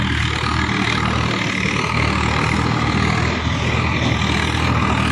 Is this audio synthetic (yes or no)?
no